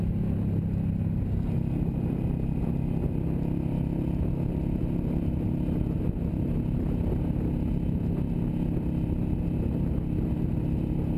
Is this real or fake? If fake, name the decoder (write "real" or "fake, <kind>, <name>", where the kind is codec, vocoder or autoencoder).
real